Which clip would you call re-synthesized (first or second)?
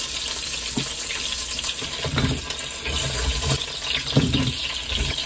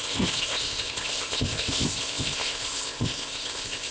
second